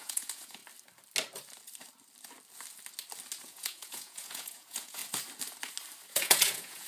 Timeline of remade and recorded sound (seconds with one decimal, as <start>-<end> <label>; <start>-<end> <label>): 0.0-0.6 remade; 0.6-3.4 recorded; 3.4-5.0 remade; 5.0-6.1 recorded; 6.1-6.9 remade